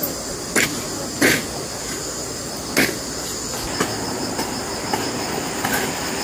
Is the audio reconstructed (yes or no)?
no